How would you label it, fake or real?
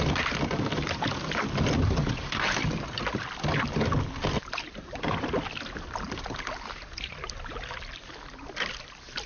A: real